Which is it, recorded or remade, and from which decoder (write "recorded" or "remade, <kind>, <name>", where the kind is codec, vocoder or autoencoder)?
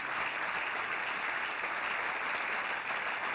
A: recorded